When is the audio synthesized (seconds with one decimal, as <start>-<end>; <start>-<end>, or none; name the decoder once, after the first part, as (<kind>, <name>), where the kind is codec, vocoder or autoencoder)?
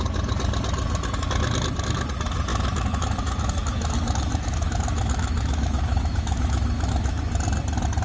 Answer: 2.5-7.3 (autoencoder, DAC-VAE)